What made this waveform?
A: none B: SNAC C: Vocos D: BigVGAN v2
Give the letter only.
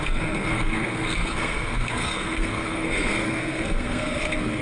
B